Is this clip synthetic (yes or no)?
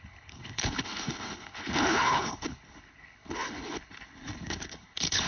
yes